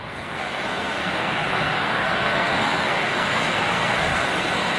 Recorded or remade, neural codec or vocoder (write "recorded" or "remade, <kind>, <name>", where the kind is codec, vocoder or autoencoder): remade, codec, SNAC